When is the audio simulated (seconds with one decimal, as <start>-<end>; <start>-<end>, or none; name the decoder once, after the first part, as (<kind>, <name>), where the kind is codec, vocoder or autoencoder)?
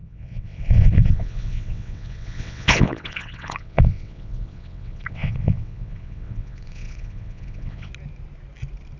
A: 0.0-7.9 (vocoder, WaveNeXt)